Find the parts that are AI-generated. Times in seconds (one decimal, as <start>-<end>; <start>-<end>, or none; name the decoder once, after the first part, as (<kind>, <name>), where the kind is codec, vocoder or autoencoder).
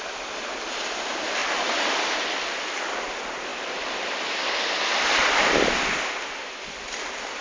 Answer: none